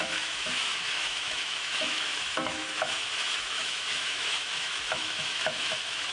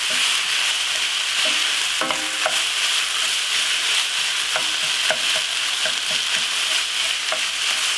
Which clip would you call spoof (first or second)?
first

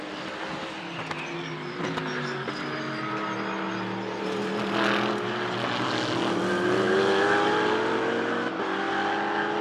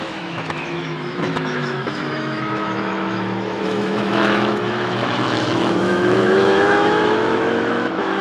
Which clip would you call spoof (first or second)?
second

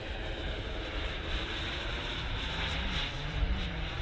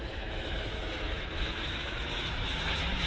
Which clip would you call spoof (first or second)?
second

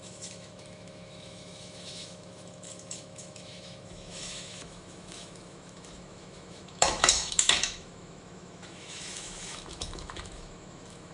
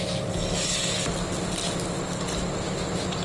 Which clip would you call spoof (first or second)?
first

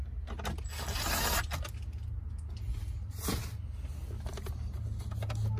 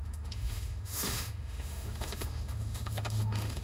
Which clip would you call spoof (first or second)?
second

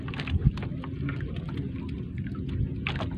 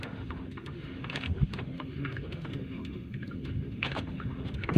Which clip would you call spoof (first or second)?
second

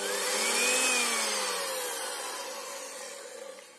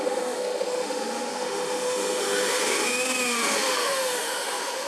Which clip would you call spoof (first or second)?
second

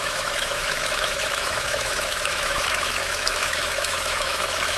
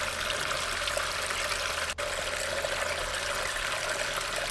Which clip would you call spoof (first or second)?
first